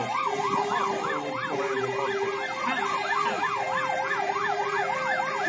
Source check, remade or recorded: recorded